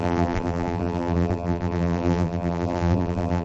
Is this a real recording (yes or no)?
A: no